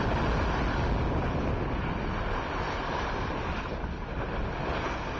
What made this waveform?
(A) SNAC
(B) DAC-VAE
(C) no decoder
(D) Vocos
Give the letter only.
C